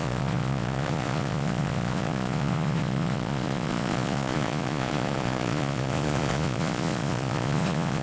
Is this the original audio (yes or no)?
no